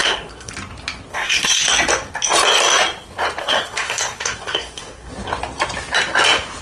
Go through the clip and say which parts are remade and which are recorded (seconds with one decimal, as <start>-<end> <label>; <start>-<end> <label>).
0.0-0.5 remade; 0.5-1.1 recorded; 1.1-1.6 remade; 1.6-3.4 recorded; 3.4-5.1 remade; 5.1-6.6 recorded